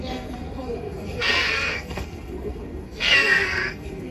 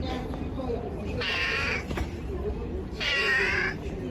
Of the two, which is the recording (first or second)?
second